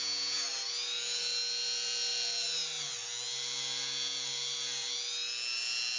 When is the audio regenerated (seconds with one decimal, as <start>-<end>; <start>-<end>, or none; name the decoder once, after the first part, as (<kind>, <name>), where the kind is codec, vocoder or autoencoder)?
none